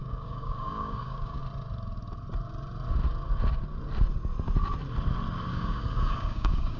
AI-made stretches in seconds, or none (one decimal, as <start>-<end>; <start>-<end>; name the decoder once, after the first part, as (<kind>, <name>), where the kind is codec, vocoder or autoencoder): 0.0-1.4 (codec, DAC); 5.5-6.8